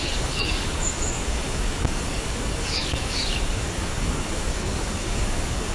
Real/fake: fake